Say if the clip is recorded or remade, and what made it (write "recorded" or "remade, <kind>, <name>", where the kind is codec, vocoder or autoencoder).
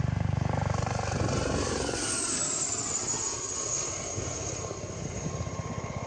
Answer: recorded